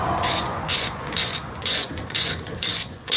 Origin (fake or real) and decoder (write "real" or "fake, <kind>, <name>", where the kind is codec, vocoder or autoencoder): fake, vocoder, Vocos